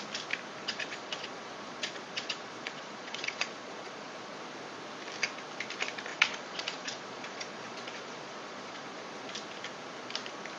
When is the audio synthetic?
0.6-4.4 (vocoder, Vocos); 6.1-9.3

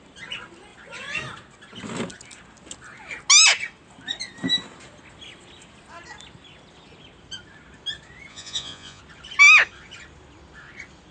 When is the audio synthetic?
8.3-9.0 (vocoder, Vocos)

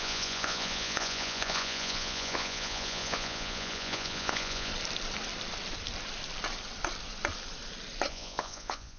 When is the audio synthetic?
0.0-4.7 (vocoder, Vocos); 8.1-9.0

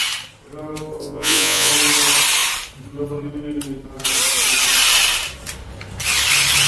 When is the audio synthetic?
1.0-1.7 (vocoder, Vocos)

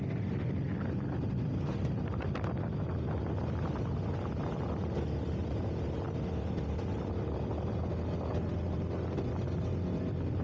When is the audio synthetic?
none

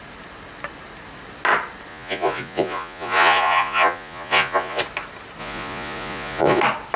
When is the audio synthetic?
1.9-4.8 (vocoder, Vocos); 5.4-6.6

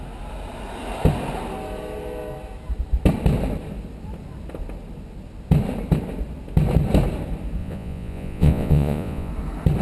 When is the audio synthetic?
7.6-9.3 (vocoder, Vocos)